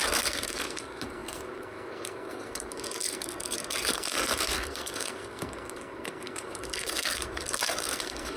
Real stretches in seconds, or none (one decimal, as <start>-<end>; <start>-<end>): none